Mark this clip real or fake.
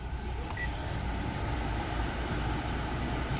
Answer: fake